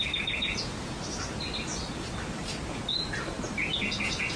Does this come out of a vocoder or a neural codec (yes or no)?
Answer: no